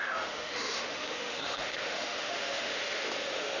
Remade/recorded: remade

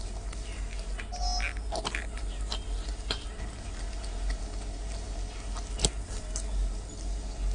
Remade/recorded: recorded